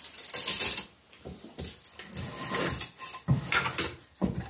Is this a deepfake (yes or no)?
no